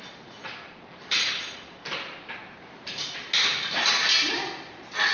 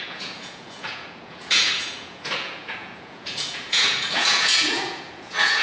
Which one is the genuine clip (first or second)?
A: first